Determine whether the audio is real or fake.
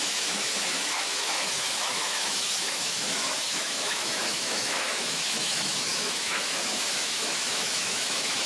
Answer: fake